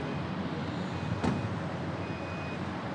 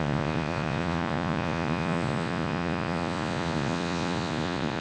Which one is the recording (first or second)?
first